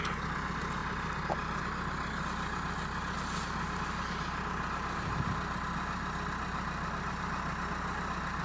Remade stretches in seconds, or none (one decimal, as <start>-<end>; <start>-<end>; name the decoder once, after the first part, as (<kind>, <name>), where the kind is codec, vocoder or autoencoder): none